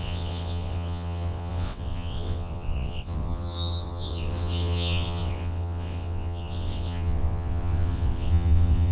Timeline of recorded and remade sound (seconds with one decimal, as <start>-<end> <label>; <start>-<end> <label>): 0.0-8.9 remade